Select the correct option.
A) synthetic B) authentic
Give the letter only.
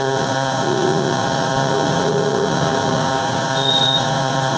A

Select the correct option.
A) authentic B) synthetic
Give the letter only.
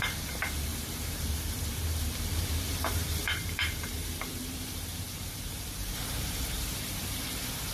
B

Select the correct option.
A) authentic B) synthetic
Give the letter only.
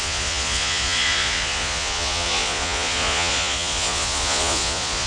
B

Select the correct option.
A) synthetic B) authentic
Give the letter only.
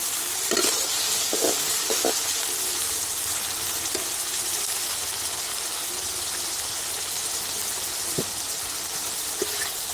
B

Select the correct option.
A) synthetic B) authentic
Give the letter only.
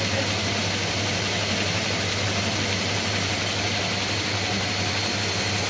B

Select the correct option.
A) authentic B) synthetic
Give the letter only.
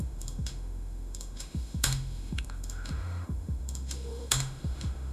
B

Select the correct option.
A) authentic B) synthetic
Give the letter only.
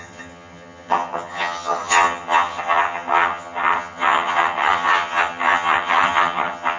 B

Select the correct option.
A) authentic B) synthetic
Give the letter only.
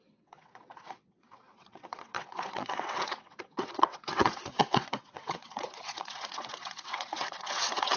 B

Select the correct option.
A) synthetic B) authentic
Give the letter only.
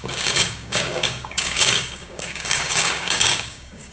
A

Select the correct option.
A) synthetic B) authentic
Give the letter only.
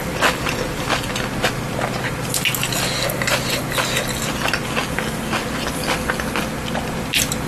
B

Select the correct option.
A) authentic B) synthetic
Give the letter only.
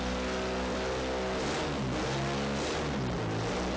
A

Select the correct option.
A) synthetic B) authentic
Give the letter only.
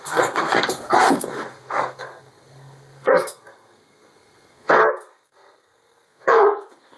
A